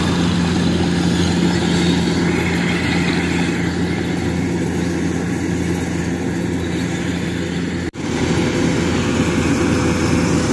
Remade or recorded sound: recorded